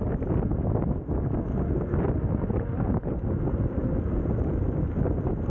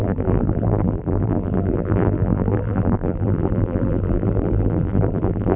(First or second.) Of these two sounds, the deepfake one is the second